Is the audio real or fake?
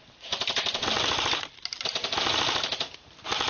real